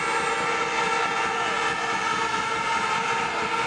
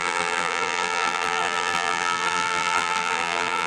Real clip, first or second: first